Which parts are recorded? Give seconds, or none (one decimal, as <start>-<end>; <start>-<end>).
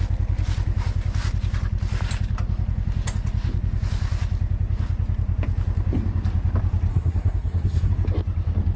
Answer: 0.0-6.9; 7.9-8.8